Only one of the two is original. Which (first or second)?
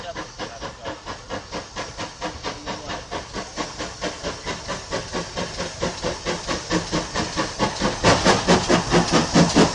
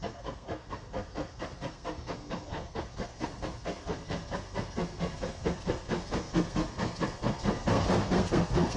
first